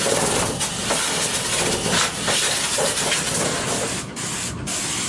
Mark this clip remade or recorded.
recorded